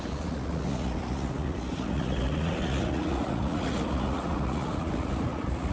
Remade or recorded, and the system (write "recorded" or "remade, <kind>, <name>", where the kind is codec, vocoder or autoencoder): remade, vocoder, Vocos